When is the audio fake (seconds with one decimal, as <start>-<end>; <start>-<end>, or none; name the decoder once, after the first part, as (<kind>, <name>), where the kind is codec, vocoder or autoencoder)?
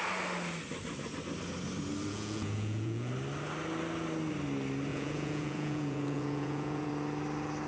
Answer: 2.1-3.1 (vocoder, Vocos); 4.9-6.9